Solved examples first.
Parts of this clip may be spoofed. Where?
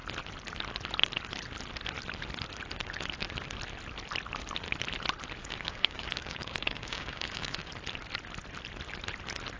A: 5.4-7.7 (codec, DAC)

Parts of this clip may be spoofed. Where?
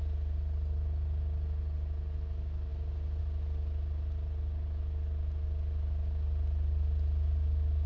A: none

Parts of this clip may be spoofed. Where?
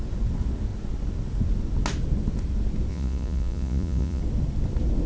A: 2.9-4.2 (vocoder, Vocos)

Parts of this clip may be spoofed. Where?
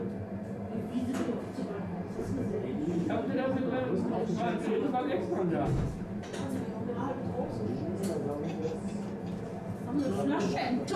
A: 1.6-5.0 (vocoder, BigVGAN v2)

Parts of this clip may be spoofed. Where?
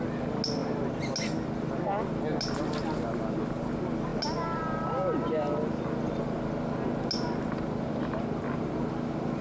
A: none